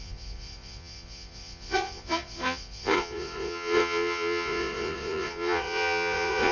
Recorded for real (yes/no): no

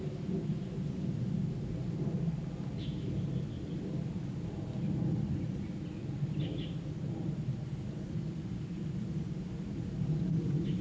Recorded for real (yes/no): yes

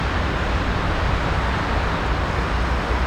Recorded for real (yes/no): yes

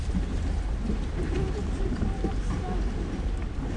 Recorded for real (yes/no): yes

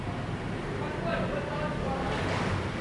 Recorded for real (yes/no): yes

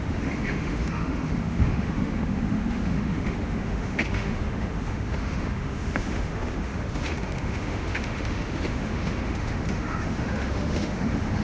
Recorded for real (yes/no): no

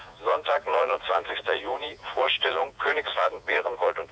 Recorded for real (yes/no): no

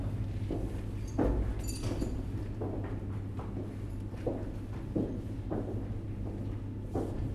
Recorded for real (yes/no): yes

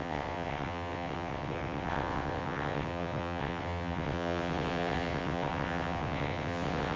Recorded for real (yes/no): no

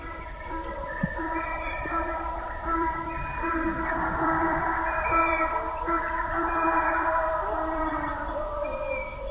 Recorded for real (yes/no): no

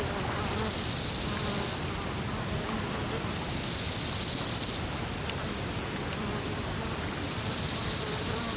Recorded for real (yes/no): yes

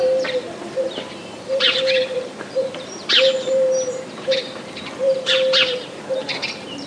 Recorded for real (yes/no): no